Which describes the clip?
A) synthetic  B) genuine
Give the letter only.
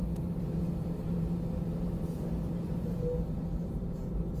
A